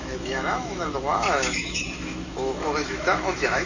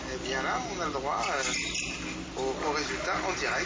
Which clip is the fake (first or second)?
first